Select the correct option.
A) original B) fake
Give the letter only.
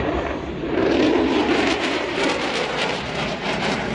B